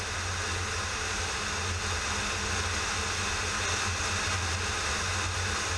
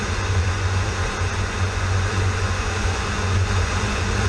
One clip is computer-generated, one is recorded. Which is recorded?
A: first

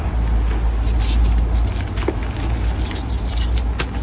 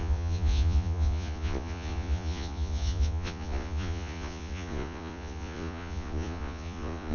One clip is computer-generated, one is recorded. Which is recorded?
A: first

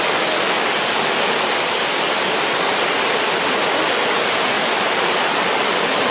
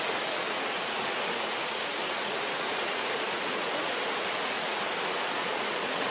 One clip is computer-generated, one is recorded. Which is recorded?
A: first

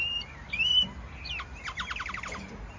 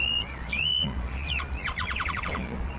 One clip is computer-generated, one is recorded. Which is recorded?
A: first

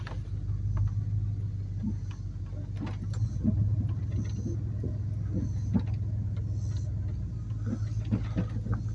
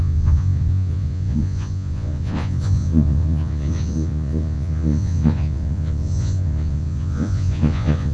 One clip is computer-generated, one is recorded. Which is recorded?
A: first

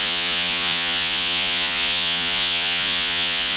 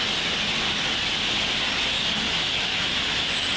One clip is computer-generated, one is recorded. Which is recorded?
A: second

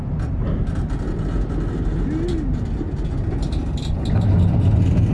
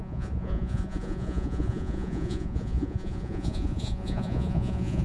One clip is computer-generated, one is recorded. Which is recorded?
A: first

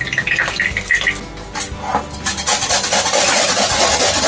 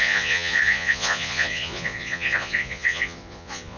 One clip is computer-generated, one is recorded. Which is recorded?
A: first